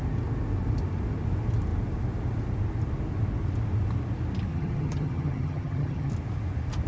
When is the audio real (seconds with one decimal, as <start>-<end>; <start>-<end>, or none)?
0.0-4.5; 6.1-6.9